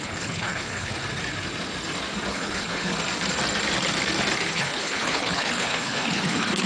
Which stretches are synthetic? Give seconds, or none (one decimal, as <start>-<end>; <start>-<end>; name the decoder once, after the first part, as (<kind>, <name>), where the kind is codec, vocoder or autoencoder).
0.0-1.0 (codec, HILCodec); 2.3-2.9; 4.5-6.7

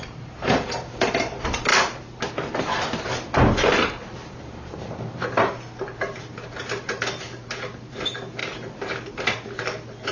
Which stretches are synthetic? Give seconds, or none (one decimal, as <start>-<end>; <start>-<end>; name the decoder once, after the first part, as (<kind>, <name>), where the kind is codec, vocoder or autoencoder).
0.0-1.7 (vocoder, BigVGAN v2); 2.6-8.4; 9.1-10.1

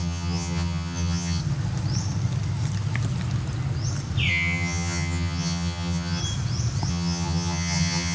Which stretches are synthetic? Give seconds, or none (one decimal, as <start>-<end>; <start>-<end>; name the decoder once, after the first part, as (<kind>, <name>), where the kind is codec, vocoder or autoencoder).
0.0-1.4 (vocoder, HiFi-GAN); 4.3-6.2; 6.9-8.1

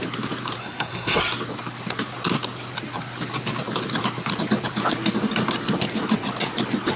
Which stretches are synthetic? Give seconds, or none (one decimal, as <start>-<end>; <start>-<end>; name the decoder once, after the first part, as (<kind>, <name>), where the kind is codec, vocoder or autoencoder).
0.6-1.2 (codec, SNAC)

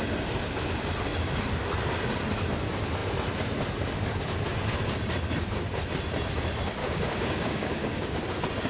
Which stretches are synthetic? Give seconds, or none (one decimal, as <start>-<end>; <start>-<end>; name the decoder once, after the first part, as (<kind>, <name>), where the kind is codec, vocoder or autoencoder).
6.8-8.2 (codec, DAC)

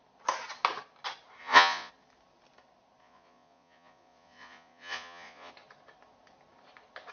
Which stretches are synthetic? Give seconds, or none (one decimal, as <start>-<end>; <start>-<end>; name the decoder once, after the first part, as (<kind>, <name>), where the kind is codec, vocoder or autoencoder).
1.4-1.9 (vocoder, Vocos); 3.0-5.5

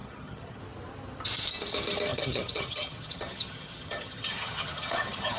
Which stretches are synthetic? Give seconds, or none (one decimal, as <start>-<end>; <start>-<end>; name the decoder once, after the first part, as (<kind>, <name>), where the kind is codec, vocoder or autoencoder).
0.0-0.6 (vocoder, HiFi-GAN); 2.1-5.4